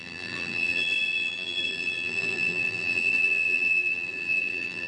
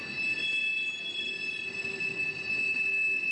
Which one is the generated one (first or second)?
first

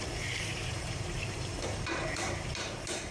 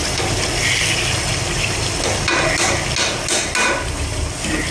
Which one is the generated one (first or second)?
first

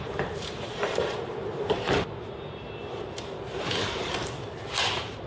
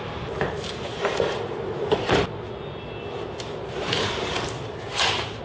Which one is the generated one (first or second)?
first